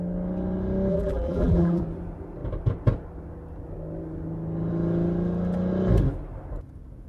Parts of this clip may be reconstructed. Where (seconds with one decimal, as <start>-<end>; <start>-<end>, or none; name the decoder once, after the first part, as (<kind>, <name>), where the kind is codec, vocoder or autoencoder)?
0.9-1.8 (vocoder, BigVGAN v2)